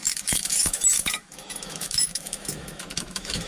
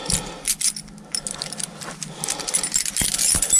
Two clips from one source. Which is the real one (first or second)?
second